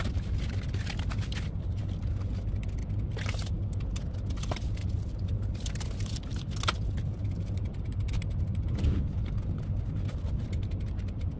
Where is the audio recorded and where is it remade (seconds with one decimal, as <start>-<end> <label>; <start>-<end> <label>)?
0.0-11.4 recorded